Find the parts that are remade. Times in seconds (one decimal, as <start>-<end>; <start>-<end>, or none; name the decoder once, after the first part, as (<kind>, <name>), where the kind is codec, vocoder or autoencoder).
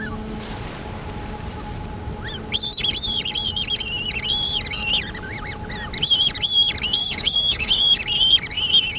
7.0-8.0 (codec, DAC)